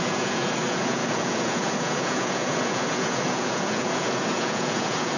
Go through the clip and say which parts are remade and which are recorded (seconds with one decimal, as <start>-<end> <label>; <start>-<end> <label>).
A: 0.0-5.2 remade